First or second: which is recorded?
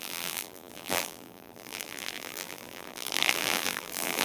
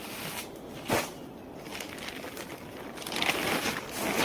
second